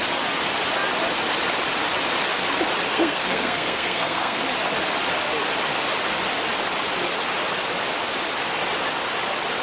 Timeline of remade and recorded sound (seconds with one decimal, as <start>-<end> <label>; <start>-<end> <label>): 0.0-2.9 recorded; 2.9-4.4 remade; 4.4-9.6 recorded